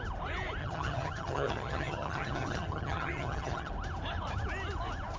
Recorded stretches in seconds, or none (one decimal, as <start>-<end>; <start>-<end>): 0.0-0.6; 3.7-5.2